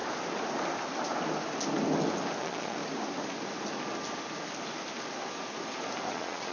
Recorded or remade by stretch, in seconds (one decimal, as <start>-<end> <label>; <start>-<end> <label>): 0.0-2.4 recorded; 2.4-2.8 remade; 2.8-6.1 recorded; 6.1-6.5 remade